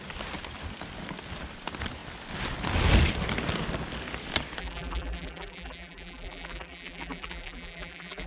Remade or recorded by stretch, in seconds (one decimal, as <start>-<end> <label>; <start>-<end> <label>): 0.0-4.6 recorded; 4.6-8.3 remade